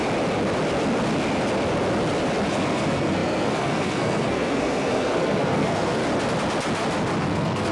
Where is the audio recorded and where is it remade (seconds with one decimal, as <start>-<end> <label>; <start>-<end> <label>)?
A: 0.0-2.5 recorded; 2.5-6.0 remade; 6.0-7.2 recorded; 7.2-7.7 remade